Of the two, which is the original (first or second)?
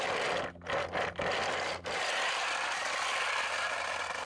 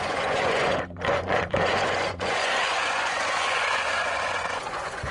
first